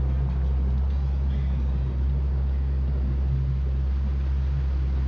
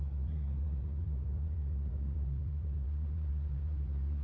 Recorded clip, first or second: first